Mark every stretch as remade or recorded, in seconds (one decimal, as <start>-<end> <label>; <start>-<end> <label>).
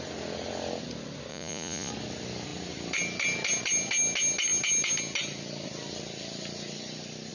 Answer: 0.0-1.3 recorded; 1.3-1.9 remade; 1.9-7.3 recorded